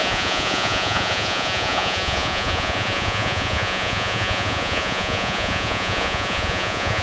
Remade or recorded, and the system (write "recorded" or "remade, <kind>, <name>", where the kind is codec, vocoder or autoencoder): remade, vocoder, Vocos